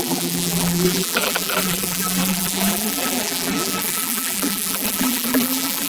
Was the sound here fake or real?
fake